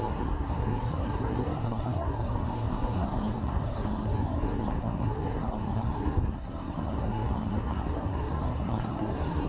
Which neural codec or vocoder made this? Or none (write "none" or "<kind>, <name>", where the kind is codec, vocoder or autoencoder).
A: codec, SNAC